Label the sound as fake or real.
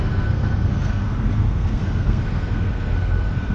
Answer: fake